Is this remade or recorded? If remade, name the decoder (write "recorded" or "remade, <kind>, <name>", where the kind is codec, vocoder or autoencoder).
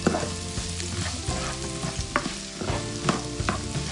recorded